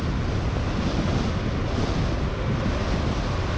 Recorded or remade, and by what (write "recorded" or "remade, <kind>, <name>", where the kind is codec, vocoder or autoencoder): recorded